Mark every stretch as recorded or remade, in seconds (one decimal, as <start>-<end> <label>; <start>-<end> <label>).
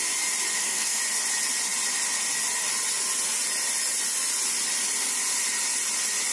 0.0-0.5 recorded; 0.5-1.0 remade; 1.0-6.3 recorded